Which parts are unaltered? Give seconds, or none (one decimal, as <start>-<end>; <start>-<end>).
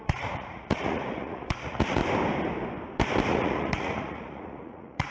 2.0-3.3